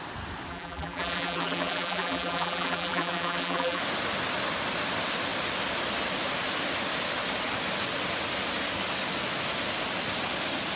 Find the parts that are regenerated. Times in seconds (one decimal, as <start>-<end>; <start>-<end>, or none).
0.5-3.8